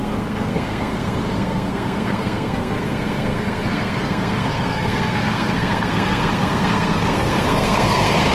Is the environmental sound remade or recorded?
remade